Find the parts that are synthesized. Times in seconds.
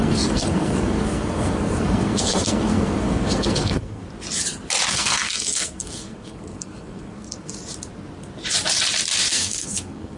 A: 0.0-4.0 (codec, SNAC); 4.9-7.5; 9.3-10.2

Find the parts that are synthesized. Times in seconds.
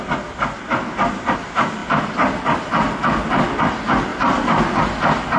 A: none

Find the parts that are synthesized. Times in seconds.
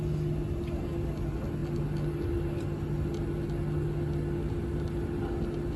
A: none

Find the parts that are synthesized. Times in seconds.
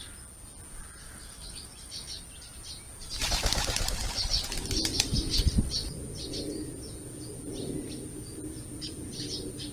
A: 1.0-2.2 (autoencoder, DAC-VAE)